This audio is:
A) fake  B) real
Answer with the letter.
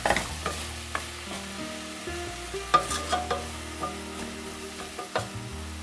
B